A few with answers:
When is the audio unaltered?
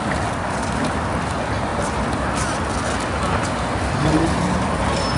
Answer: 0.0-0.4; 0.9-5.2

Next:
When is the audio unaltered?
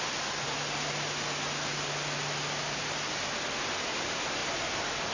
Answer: 0.0-5.1